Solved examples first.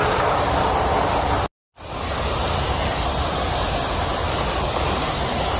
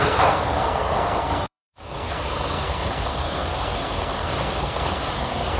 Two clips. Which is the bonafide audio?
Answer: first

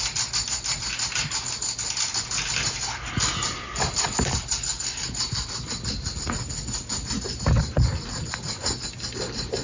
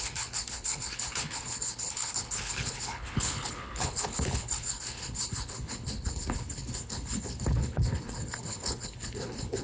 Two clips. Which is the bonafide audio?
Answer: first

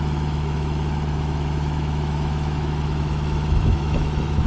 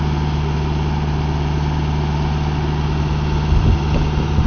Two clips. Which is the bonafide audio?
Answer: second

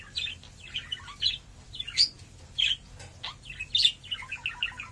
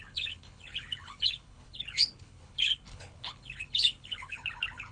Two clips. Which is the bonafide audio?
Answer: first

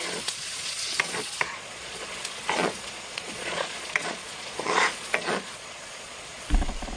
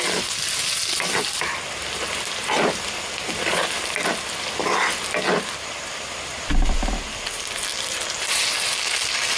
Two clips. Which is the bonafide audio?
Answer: second